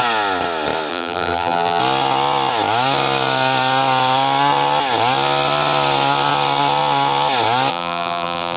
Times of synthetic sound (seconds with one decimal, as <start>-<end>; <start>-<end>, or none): 0.9-1.8; 7.7-8.6